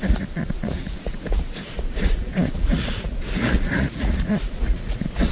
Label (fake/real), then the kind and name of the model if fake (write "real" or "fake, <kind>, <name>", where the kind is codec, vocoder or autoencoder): fake, vocoder, Vocos